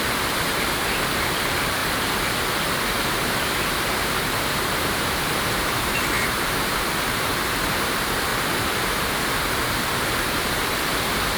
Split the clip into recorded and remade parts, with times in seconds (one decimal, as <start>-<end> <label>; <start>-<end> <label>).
0.0-1.8 remade; 1.8-2.5 recorded; 2.5-8.3 remade; 8.3-9.5 recorded; 9.5-11.4 remade